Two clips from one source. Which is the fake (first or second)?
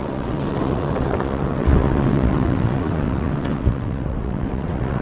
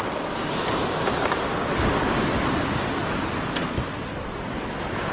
first